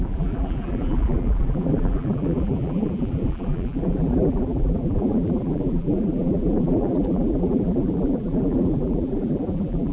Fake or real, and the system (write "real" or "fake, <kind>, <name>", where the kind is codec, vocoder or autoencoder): fake, vocoder, BigVGAN v2